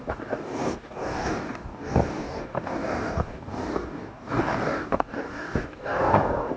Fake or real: fake